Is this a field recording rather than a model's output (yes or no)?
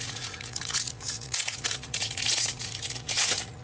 no